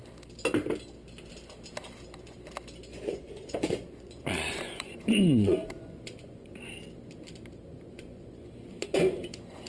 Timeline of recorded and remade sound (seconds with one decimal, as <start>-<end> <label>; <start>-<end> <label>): 0.0-2.9 recorded; 2.9-6.7 remade; 6.7-7.7 recorded; 7.7-9.7 remade